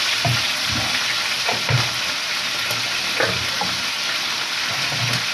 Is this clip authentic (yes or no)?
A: yes